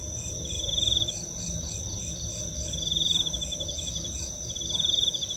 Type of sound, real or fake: fake